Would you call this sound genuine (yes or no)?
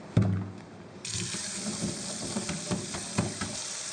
no